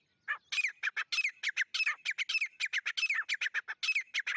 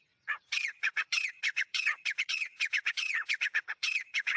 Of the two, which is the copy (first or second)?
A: second